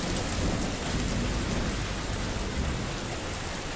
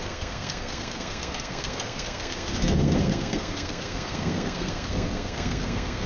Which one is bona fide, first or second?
first